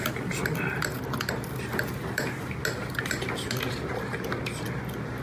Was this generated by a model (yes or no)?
no